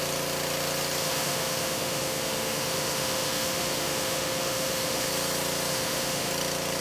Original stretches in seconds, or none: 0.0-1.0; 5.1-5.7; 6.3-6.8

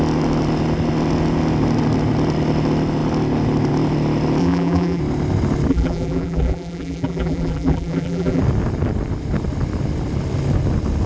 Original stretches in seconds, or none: 0.0-4.4; 5.0-5.7; 8.4-11.1

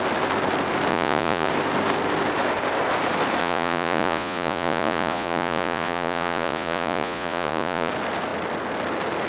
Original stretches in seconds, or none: 0.0-0.9; 1.5-3.4; 7.9-9.3

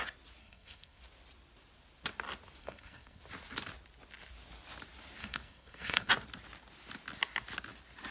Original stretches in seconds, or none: 0.0-0.4; 1.0-2.6; 3.2-5.2; 6.1-8.1